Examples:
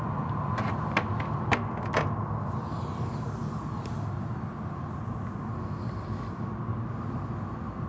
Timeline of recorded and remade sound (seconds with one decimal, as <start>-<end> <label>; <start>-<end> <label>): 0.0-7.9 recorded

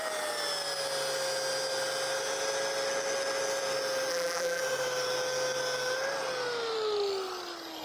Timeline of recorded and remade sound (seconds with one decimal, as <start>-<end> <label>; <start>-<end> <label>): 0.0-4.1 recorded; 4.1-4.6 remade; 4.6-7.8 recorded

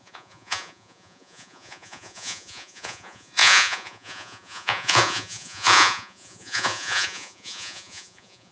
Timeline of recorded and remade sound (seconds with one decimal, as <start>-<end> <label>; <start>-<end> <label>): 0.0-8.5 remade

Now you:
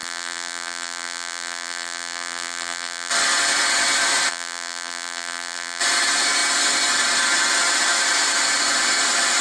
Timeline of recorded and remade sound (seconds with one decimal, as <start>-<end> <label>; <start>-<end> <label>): 0.0-3.1 remade; 3.1-4.3 recorded; 4.3-5.8 remade; 5.8-9.4 recorded

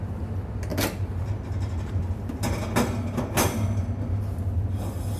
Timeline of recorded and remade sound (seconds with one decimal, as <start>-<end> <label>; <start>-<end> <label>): 0.0-5.2 recorded